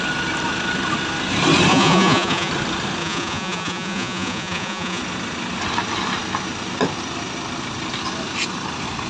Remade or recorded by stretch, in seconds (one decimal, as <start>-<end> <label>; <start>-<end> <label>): 0.0-1.7 recorded; 1.7-2.5 remade; 2.5-3.0 recorded; 3.0-5.0 remade; 5.0-9.1 recorded